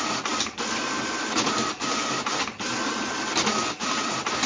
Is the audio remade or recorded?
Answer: recorded